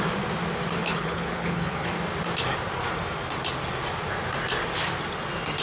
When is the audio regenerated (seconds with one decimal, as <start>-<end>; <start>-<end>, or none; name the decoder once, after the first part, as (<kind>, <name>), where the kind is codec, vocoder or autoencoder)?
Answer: 0.8-1.9 (codec, HILCodec)